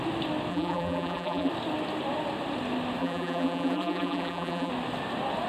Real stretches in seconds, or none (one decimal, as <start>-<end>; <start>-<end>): 0.0-0.5; 1.5-3.0; 4.7-5.5